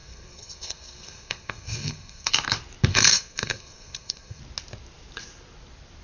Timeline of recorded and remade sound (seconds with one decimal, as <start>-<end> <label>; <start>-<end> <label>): 0.0-2.3 remade; 2.3-2.9 recorded; 2.9-4.4 remade; 4.4-6.0 recorded